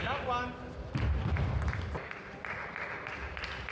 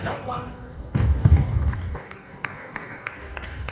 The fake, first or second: second